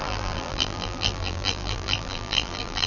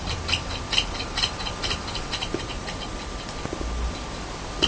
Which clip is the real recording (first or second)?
second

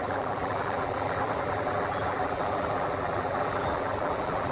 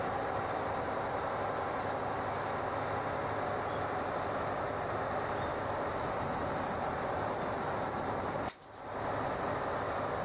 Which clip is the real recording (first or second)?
second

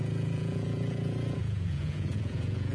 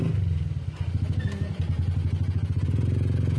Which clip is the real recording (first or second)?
second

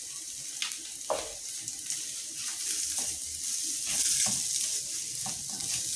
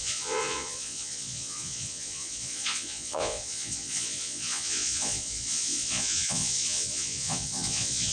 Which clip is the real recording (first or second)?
first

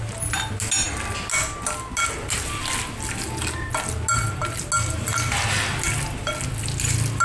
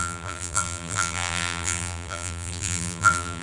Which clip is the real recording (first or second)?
first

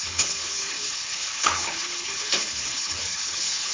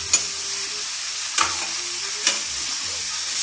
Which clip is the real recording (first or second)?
second